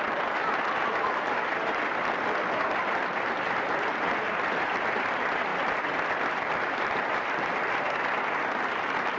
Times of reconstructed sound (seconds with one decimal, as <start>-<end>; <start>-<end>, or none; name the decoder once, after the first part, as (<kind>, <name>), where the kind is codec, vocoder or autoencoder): none